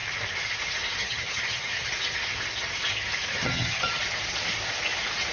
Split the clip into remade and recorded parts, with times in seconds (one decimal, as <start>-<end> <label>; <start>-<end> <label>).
0.0-1.0 recorded; 1.0-1.9 remade; 1.9-3.3 recorded; 3.3-4.0 remade; 4.0-5.3 recorded